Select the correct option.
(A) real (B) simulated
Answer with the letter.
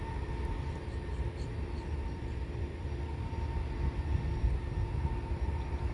A